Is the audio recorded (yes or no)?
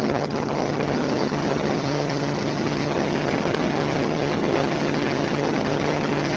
no